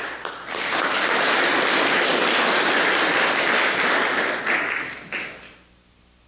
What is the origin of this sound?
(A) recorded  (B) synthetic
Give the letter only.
A